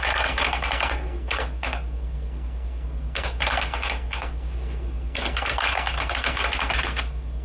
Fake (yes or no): yes